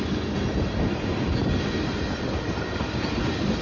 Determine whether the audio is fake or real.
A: real